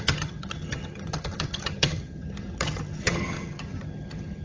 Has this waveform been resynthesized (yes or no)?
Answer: yes